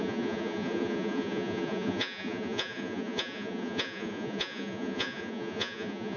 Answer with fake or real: fake